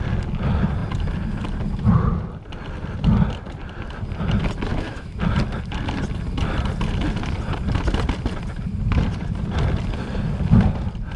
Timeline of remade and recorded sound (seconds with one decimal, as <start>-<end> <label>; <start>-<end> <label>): 0.0-4.7 recorded; 4.7-5.2 remade; 5.2-11.2 recorded